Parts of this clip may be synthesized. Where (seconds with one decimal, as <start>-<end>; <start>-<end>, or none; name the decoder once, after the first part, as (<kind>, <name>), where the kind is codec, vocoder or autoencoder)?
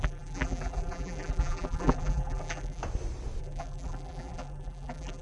0.0-2.8 (vocoder, BigVGAN v2); 3.4-5.2